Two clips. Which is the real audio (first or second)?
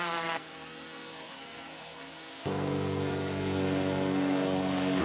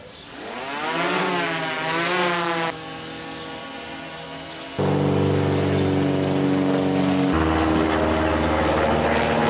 second